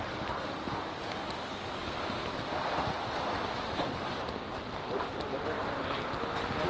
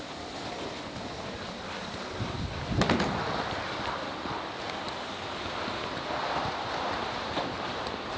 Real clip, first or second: first